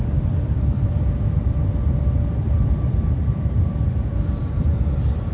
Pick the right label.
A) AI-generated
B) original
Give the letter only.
A